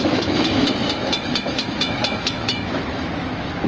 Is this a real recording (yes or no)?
no